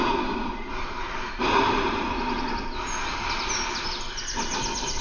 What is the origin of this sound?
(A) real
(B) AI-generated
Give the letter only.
A